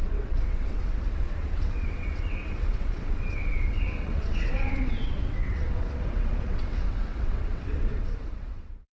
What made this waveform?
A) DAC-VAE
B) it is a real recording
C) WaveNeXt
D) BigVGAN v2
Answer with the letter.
C